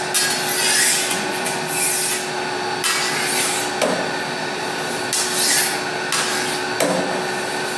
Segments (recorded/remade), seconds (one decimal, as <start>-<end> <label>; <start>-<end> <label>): 0.0-0.6 recorded; 0.6-1.6 remade; 1.6-7.8 recorded